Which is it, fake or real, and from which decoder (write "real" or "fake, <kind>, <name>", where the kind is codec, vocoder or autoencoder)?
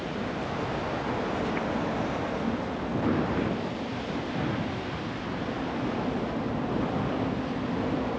real